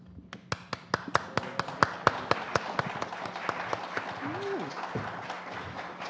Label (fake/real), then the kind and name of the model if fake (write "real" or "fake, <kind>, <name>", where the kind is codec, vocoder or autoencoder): real